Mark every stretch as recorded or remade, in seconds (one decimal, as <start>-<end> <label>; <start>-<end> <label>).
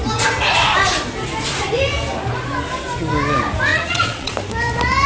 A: 0.0-3.7 recorded; 3.7-4.3 remade; 4.3-5.1 recorded